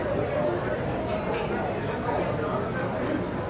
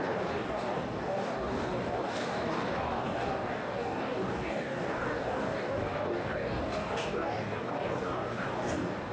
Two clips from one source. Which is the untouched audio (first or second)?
first